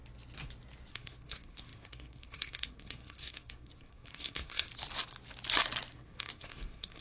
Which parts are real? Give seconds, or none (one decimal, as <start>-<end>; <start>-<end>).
0.0-0.9; 4.7-5.9